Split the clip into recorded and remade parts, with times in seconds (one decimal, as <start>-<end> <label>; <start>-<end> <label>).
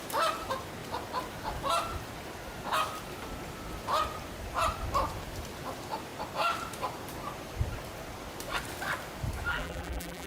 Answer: 0.0-9.5 recorded; 9.5-10.3 remade